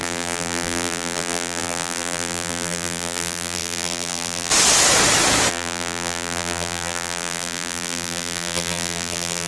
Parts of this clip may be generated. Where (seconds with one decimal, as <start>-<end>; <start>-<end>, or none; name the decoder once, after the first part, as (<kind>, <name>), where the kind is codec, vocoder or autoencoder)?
0.0-4.5 (vocoder, BigVGAN v2); 5.5-9.5